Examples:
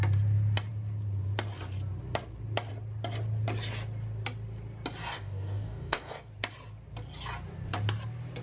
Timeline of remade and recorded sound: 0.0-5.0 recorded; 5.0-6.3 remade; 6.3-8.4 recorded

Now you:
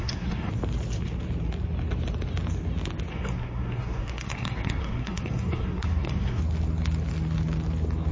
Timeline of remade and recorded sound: 0.0-0.5 remade; 0.5-3.1 recorded; 3.1-6.4 remade; 6.4-8.1 recorded

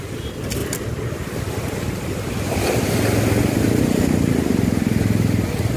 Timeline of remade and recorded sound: 0.0-5.8 recorded

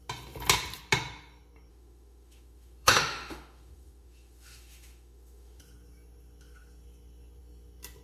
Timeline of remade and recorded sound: 0.0-1.7 recorded; 1.7-5.6 remade; 5.6-8.0 recorded

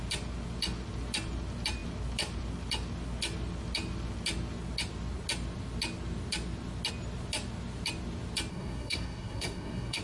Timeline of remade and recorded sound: 0.0-8.5 recorded; 8.5-10.0 remade

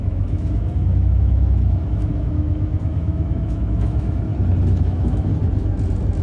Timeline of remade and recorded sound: 0.0-4.3 remade; 4.3-4.8 recorded; 4.8-5.3 remade; 5.3-6.2 recorded

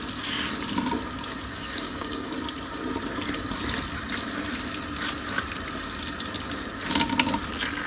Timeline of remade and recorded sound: 0.0-1.5 recorded; 1.5-2.3 remade; 2.3-7.9 recorded